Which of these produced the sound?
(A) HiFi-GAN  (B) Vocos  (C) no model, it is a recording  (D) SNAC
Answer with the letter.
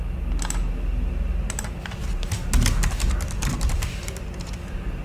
C